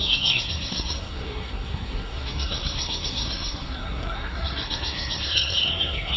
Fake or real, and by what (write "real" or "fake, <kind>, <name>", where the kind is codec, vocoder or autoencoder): fake, codec, SNAC